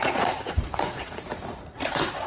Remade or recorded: remade